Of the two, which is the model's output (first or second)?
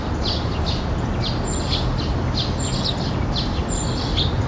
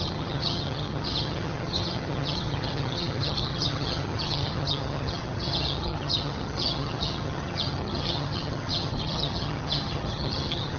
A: second